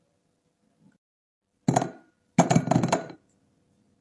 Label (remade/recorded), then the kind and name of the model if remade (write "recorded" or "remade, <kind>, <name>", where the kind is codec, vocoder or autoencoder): recorded